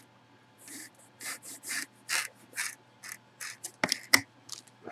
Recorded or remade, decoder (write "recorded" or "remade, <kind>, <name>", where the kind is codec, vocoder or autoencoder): recorded